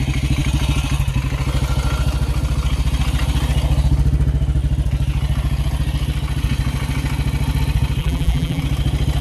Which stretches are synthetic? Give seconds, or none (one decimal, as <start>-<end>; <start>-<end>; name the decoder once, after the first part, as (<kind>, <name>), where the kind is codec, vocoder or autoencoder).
8.0-8.6 (vocoder, BigVGAN v2)